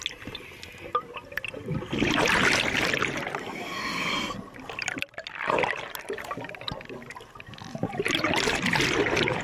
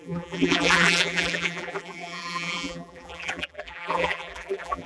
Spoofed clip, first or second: second